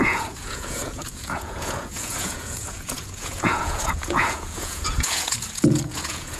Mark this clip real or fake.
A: fake